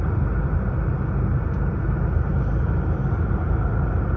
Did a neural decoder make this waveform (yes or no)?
no